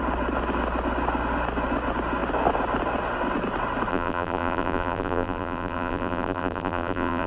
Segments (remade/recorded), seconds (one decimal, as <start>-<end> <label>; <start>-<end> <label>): 0.0-3.9 recorded; 3.9-7.3 remade